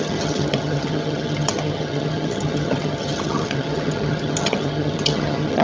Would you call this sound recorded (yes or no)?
no